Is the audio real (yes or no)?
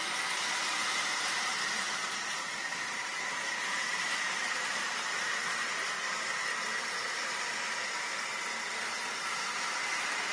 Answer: no